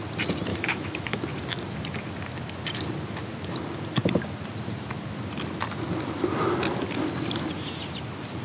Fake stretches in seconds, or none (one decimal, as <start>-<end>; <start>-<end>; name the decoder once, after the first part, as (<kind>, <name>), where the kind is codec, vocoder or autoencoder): 0.5-1.2 (autoencoder, DAC-VAE)